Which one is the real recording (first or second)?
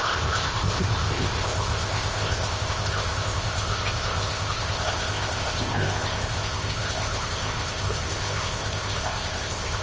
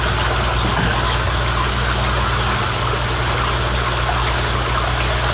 second